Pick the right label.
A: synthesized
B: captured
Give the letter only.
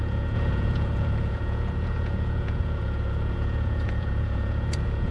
A